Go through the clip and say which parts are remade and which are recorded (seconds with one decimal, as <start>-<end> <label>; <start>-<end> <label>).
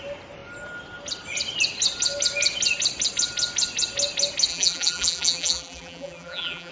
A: 0.0-4.5 recorded; 4.5-6.7 remade